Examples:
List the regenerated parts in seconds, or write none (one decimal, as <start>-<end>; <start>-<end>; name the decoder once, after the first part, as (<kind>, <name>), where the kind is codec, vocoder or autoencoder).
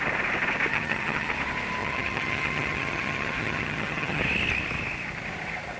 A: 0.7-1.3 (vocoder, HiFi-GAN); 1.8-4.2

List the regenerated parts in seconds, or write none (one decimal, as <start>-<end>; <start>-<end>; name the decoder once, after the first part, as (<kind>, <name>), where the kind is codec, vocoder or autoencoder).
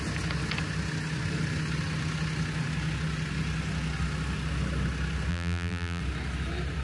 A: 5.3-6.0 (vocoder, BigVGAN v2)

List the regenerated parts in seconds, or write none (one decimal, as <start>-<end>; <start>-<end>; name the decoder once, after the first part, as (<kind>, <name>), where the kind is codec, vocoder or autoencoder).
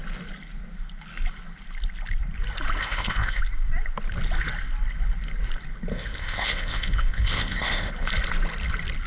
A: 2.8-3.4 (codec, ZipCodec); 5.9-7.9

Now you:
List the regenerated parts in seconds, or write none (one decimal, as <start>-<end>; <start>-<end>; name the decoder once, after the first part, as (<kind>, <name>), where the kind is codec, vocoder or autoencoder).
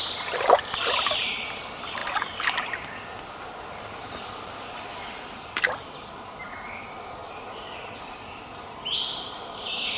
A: none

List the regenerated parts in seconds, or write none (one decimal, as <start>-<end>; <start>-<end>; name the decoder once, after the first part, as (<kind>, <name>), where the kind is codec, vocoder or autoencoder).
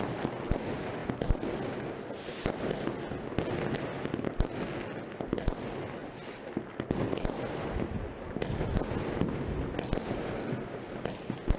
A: none